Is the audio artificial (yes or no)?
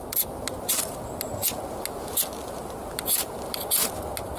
no